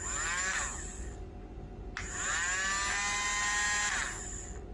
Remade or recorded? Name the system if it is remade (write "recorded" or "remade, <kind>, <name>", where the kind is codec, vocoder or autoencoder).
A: recorded